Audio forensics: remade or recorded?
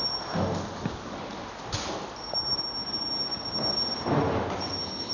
recorded